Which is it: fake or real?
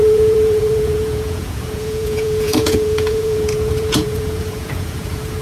fake